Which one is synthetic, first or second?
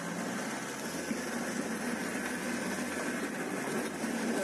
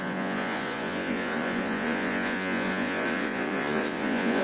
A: second